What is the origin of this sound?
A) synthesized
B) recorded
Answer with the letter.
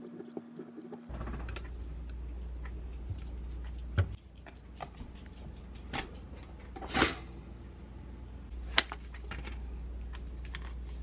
B